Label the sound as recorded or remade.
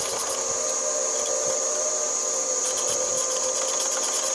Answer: recorded